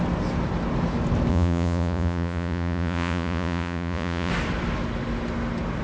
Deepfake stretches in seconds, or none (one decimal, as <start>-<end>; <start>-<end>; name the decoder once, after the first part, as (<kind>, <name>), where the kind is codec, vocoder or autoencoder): 1.3-4.3 (vocoder, Vocos)